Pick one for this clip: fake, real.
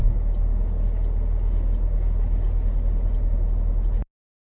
real